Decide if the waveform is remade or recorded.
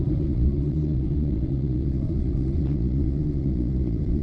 remade